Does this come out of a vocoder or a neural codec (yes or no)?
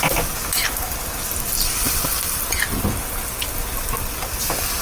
no